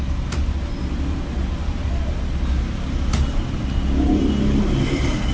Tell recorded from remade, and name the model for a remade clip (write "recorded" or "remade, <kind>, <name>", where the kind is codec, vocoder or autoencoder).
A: recorded